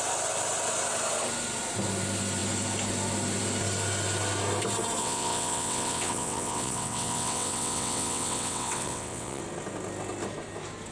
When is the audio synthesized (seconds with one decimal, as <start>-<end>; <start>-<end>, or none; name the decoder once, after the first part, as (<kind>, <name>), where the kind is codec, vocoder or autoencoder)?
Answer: 5.0-9.4 (vocoder, WaveNeXt)